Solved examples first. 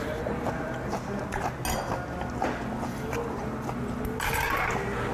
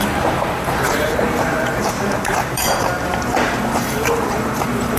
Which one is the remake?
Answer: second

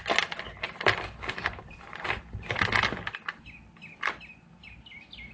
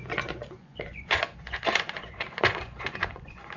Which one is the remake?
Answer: second